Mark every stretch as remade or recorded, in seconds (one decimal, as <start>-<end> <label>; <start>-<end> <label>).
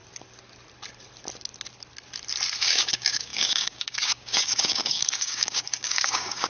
0.0-2.6 recorded; 2.6-6.5 remade